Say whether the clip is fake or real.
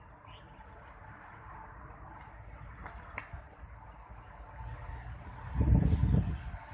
real